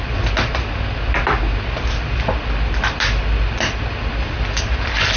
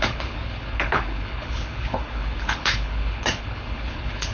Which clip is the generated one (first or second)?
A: second